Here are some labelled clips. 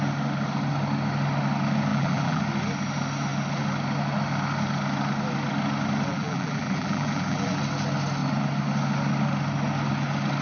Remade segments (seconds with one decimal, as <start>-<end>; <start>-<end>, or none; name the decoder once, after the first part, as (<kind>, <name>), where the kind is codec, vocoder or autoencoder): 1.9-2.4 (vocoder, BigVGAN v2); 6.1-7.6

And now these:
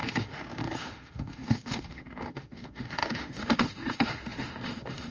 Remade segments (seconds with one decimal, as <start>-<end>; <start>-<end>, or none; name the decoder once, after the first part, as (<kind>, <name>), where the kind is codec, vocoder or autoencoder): 0.0-5.1 (autoencoder, DAC-VAE)

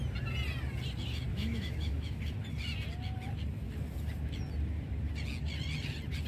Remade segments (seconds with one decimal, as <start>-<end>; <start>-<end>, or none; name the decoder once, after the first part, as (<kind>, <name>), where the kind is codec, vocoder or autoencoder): 1.3-2.2 (autoencoder, DAC-VAE)

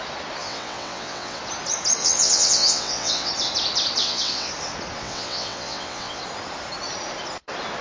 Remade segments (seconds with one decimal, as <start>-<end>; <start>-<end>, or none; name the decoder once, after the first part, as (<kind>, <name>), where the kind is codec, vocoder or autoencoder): 0.4-1.4 (vocoder, WaveNeXt); 2.0-3.3; 4.0-4.5; 5.0-6.2

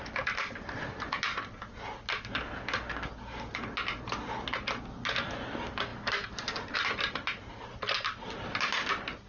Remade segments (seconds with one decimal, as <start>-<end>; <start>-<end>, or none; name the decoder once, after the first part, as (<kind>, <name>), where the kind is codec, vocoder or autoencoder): 5.9-7.8 (vocoder, BigVGAN v2)

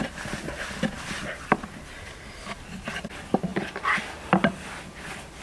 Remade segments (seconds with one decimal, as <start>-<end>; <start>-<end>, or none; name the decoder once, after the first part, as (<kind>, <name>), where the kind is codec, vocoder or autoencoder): 0.0-5.4 (vocoder, BigVGAN v2)